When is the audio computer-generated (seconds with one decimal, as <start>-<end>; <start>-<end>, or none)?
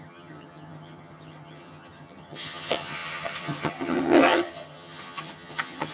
0.0-5.9